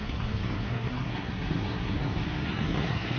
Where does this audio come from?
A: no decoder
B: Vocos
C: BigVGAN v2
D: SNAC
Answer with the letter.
D